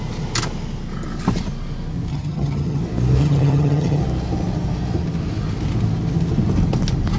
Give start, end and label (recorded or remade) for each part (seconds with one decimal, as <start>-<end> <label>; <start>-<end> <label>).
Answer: 0.0-2.1 recorded; 2.1-2.8 remade; 2.8-3.2 recorded; 3.2-4.0 remade; 4.0-7.2 recorded